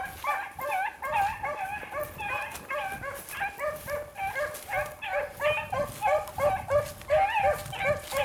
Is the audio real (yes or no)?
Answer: yes